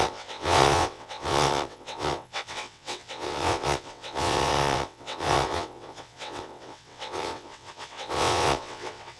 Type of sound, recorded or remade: remade